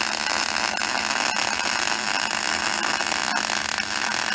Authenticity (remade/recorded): recorded